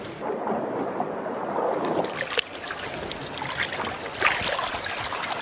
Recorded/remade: recorded